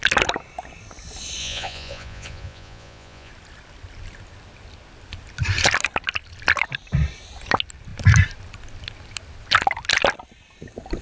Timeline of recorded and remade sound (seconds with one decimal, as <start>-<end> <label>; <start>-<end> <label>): 0.0-1.4 recorded; 1.4-3.3 remade; 3.3-11.0 recorded